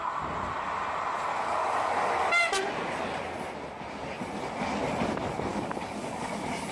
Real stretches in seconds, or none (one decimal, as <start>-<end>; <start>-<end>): 0.0-1.3; 2.1-5.5; 6.3-6.7